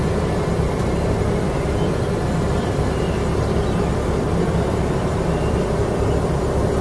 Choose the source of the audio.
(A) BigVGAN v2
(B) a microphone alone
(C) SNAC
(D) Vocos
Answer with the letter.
A